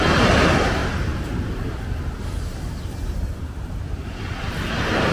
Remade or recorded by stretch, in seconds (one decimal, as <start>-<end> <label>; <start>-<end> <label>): 0.0-0.8 recorded; 0.8-3.9 remade; 3.9-5.1 recorded

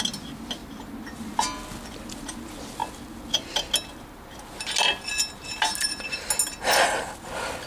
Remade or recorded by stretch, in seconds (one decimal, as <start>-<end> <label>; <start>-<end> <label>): 0.0-7.7 recorded

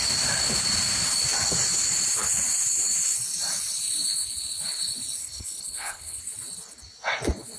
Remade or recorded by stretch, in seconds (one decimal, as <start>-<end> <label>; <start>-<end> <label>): 0.0-5.2 recorded; 5.2-6.2 remade; 6.2-7.6 recorded